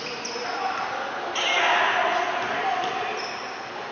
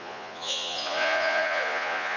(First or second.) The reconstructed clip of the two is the second